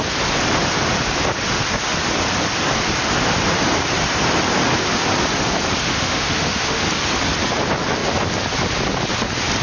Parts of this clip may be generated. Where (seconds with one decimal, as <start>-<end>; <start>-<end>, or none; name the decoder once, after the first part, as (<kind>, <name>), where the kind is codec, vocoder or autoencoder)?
5.8-6.8 (autoencoder, DAC-VAE)